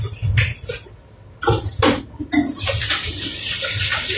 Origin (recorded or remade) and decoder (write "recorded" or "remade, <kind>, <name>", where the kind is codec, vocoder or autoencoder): recorded